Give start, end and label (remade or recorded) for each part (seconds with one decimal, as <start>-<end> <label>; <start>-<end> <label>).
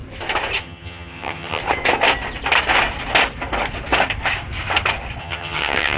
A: 0.0-0.6 recorded; 0.6-1.6 remade; 1.6-5.2 recorded; 5.2-6.0 remade